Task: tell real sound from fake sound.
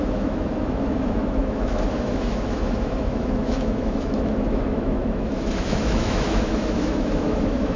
fake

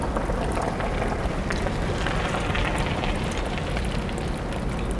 real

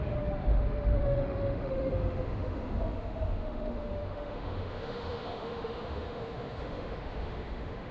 fake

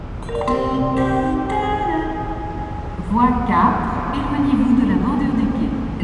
real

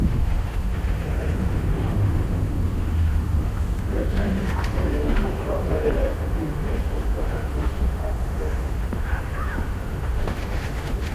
fake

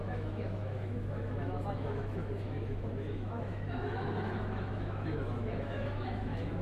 fake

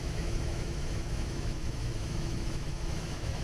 fake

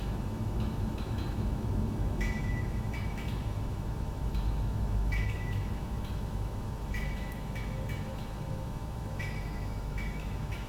fake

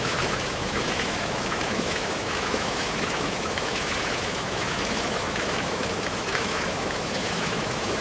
fake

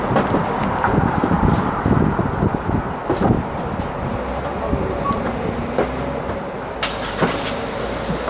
real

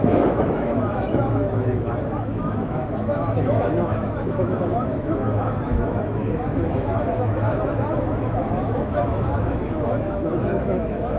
fake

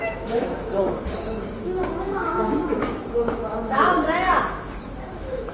fake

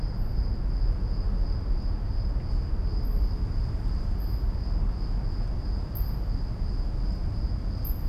real